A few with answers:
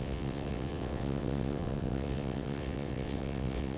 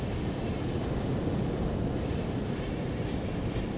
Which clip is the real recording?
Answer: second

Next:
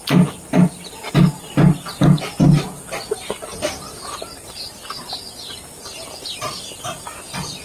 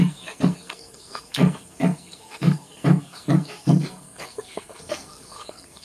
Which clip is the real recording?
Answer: first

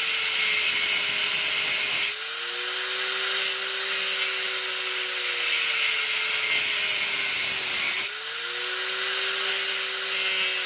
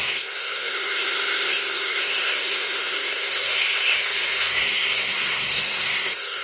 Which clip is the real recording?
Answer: first